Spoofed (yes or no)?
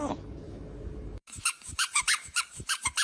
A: yes